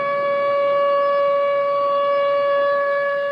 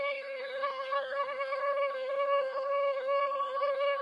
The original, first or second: first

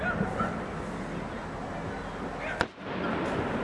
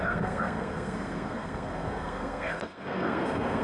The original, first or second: first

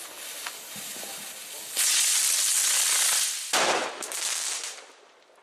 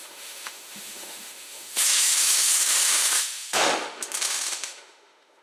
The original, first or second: first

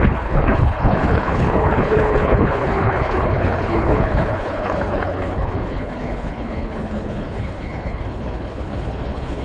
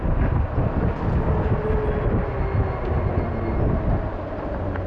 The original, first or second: second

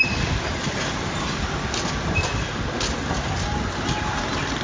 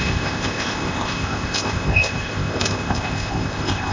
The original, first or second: first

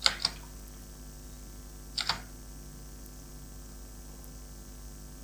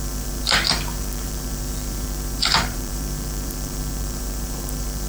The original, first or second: first